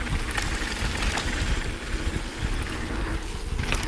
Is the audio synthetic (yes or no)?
no